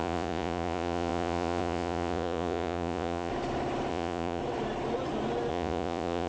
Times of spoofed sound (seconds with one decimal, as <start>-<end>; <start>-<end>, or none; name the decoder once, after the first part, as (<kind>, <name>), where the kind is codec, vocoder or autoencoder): 0.0-3.3 (vocoder, Vocos); 3.9-4.4; 5.5-6.3